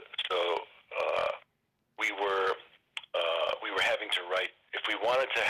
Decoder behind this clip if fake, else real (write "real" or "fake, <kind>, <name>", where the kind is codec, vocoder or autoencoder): real